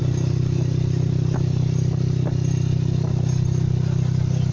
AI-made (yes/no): no